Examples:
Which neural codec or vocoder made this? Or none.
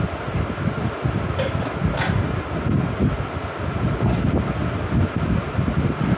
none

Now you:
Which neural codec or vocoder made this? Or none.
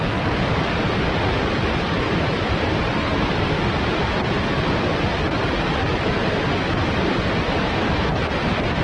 none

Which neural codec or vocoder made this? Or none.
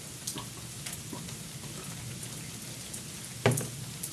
none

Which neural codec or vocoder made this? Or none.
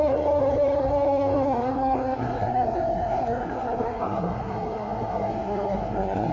codec, SNAC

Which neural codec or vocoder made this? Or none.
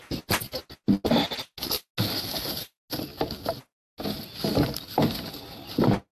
none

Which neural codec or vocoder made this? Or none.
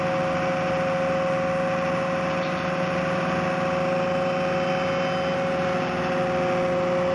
none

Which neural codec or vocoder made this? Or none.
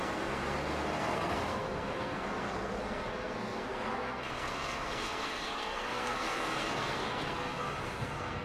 codec, SNAC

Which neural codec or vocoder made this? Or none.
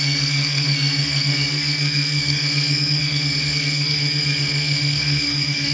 codec, SNAC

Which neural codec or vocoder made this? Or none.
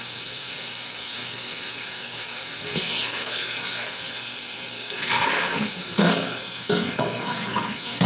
codec, SNAC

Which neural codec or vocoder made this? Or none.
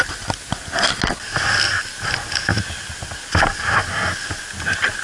none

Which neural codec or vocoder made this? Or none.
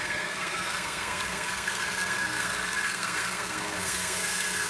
codec, SNAC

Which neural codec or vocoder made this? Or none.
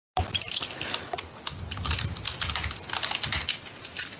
none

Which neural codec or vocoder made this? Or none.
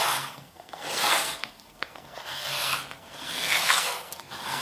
codec, SNAC